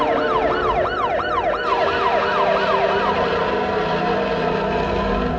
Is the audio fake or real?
real